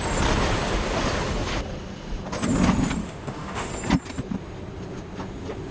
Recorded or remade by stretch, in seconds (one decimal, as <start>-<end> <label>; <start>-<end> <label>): 0.0-3.0 recorded; 3.0-3.7 remade; 3.7-5.7 recorded